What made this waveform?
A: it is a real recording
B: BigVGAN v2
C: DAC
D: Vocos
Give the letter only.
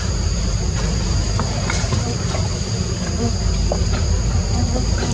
B